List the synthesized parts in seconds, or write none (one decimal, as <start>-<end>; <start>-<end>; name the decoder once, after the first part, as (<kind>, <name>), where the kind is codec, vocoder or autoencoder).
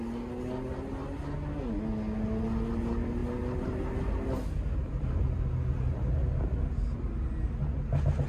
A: none